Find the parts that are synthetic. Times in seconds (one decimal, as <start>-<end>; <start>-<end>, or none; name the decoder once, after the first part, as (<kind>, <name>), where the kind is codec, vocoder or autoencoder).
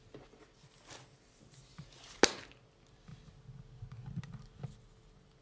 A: none